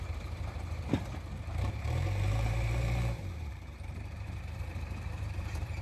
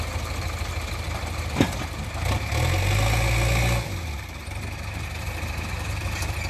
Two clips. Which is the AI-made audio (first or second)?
first